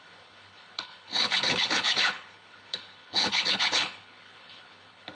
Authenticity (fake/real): fake